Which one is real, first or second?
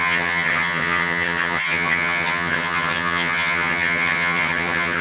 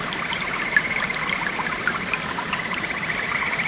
second